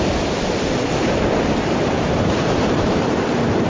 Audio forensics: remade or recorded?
remade